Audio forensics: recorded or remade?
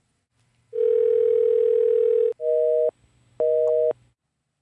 recorded